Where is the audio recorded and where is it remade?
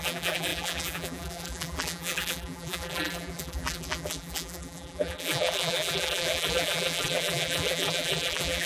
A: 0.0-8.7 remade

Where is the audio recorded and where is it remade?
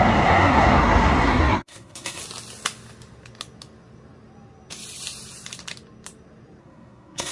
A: 0.0-2.2 remade; 2.2-6.6 recorded; 6.6-7.3 remade